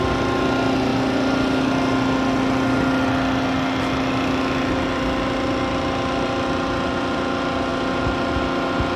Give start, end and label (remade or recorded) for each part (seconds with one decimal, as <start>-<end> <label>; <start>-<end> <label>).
0.0-9.0 recorded